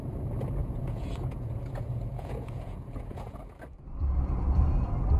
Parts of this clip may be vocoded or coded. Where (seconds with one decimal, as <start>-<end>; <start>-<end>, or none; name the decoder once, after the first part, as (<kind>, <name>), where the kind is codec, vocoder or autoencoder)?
0.6-3.4 (vocoder, Vocos)